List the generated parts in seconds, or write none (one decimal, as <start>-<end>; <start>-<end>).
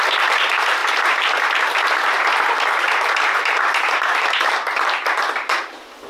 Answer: none